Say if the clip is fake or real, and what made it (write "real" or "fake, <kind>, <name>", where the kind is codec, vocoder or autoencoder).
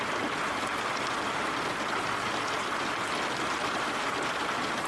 real